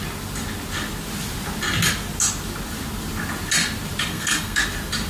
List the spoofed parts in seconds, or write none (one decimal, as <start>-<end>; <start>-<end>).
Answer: 4.1-4.6